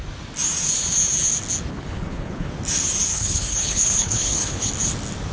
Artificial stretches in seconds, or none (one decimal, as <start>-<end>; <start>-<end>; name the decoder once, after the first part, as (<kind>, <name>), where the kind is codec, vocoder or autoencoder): 1.7-2.5 (codec, HILCodec); 3.1-4.7